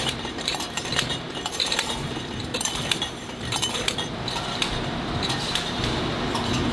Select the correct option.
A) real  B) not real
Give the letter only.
B